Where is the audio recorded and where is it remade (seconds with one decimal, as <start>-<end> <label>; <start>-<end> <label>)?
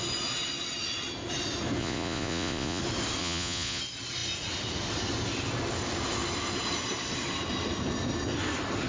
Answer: 0.0-1.8 recorded; 1.8-2.8 remade; 2.8-3.2 recorded; 3.2-3.8 remade; 3.8-8.9 recorded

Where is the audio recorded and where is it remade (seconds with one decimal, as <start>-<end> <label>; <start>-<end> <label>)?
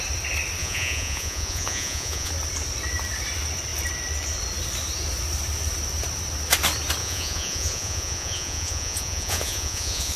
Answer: 0.0-0.6 recorded; 0.6-2.3 remade; 2.3-7.0 recorded; 7.0-10.2 remade